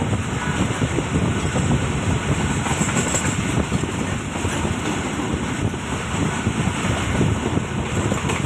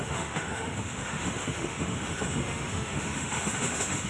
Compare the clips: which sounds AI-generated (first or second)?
second